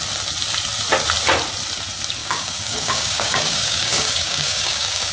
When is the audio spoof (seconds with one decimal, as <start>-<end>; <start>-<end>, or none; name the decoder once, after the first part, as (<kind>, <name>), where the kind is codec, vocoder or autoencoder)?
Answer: 2.2-5.1 (codec, DAC)